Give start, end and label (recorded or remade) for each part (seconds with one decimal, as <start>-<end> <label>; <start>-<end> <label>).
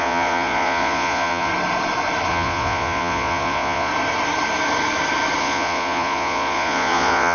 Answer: 0.0-1.5 remade; 1.5-2.3 recorded; 2.3-3.9 remade; 3.9-5.4 recorded; 5.4-7.3 remade